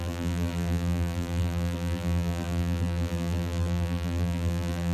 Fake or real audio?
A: fake